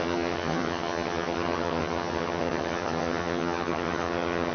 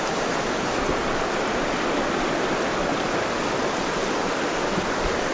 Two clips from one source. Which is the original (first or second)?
second